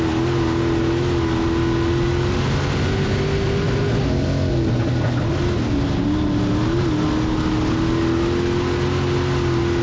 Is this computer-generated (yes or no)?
no